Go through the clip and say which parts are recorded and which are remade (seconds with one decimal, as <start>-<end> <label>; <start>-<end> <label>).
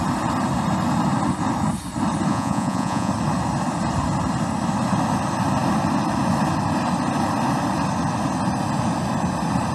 0.0-2.3 recorded; 2.3-3.1 remade; 3.1-9.7 recorded